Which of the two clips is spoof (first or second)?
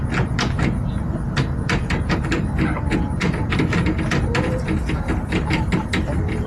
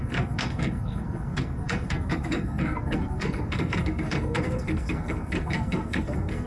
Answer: second